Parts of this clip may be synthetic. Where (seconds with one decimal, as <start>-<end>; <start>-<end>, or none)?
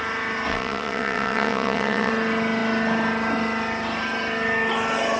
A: 0.5-2.1